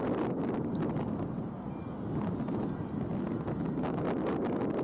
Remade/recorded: recorded